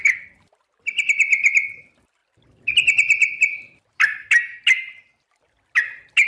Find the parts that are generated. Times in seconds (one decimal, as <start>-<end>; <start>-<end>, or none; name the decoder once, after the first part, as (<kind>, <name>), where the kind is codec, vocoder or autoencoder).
none